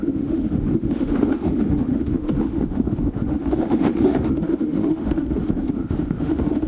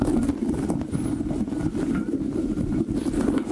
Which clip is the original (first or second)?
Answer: second